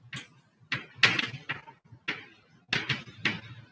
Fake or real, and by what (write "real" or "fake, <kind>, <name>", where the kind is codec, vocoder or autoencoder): real